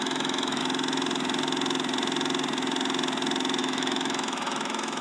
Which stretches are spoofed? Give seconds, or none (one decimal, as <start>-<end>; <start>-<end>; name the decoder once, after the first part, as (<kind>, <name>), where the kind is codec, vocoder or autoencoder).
0.0-0.6 (autoencoder, DAC-VAE); 3.6-5.0